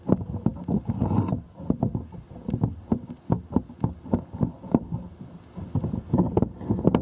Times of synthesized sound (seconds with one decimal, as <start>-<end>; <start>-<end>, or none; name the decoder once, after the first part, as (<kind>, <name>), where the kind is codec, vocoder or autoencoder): none